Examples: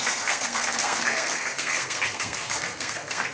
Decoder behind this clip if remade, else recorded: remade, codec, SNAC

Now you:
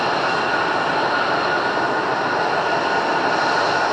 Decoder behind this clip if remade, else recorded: recorded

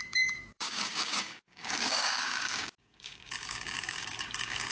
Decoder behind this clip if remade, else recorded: remade, codec, DAC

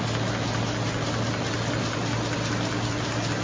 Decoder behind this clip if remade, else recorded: recorded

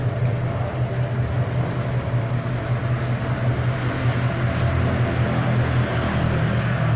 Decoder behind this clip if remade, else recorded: recorded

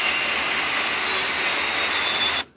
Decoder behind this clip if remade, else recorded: recorded